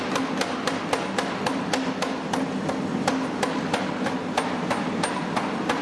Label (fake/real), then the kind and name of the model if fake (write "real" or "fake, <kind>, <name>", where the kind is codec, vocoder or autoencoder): real